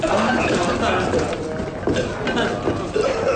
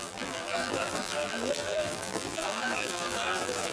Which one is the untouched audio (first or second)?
first